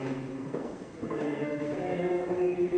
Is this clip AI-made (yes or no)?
yes